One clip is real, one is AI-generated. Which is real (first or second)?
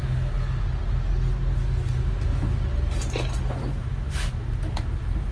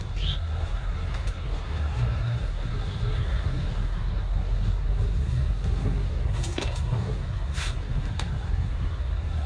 first